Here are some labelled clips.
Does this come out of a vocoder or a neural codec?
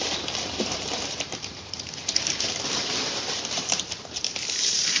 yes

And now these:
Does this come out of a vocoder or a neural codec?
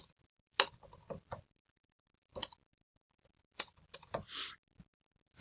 no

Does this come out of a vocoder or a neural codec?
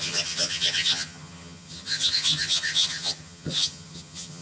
yes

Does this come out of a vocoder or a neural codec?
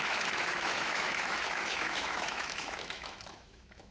yes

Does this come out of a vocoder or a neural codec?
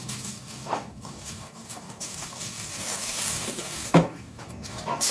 yes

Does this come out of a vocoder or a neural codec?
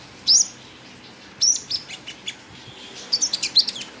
no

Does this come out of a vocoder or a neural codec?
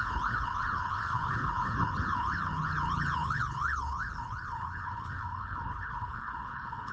yes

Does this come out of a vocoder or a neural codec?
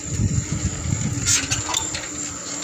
no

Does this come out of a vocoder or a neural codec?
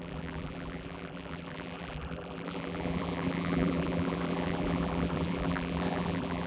yes